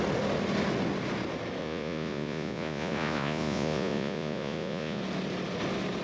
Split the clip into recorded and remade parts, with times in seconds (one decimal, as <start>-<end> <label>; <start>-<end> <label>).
0.0-1.6 recorded; 1.6-5.0 remade; 5.0-6.0 recorded